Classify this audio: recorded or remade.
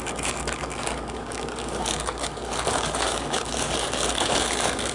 remade